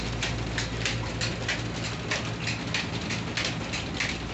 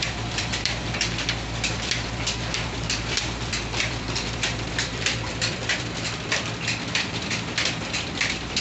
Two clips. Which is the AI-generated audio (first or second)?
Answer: second